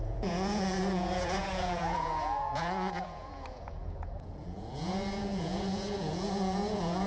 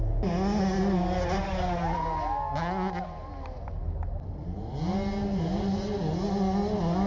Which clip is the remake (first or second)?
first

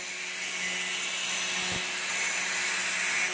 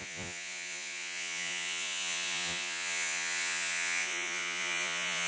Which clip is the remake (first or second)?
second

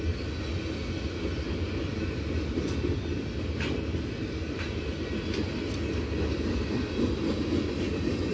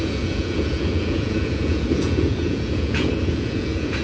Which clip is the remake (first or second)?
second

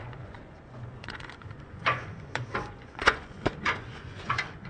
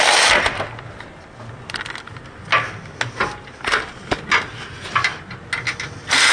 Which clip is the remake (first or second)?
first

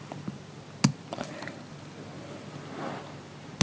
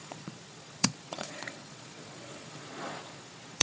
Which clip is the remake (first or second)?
second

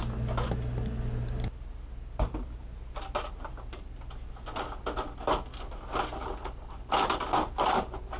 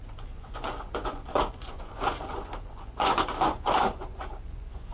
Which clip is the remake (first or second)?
second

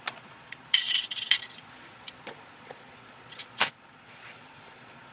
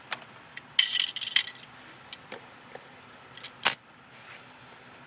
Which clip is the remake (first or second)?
first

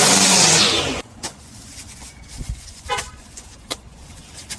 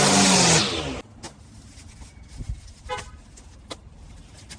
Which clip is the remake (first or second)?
first